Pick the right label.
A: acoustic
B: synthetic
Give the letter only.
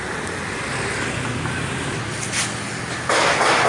A